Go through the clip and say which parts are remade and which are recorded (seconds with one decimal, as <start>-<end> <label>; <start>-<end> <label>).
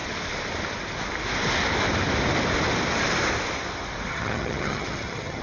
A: 0.0-4.1 recorded; 4.1-5.4 remade